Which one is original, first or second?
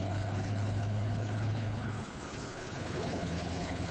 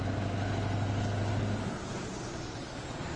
second